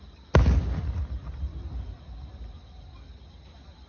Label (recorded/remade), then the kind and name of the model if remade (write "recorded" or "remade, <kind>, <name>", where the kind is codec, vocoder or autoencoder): recorded